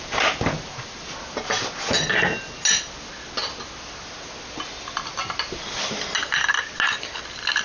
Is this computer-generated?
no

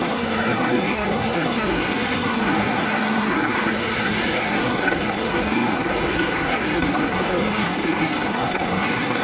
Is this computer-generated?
yes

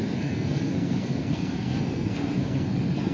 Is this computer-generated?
yes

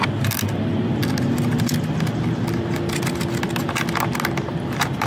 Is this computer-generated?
no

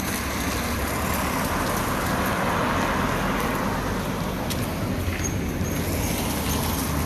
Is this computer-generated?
no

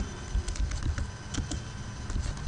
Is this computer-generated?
no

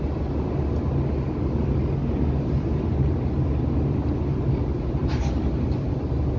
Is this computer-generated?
no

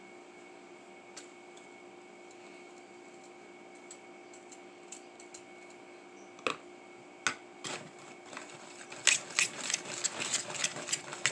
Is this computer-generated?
no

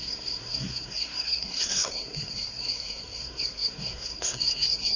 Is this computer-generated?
yes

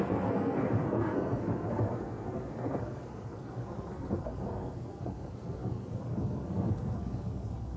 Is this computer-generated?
yes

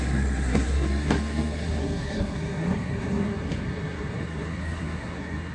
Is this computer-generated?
yes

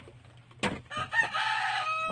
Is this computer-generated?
no